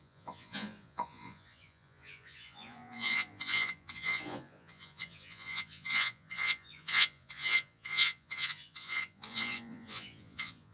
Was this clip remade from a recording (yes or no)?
yes